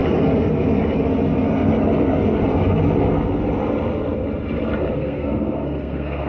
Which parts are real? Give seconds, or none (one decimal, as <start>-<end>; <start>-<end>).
0.0-4.9